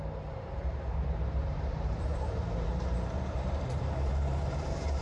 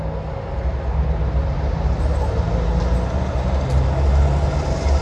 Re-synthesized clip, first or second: first